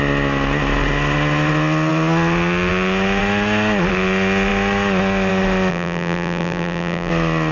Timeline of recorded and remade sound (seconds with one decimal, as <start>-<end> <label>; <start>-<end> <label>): 0.0-5.7 recorded; 5.7-7.1 remade; 7.1-7.5 recorded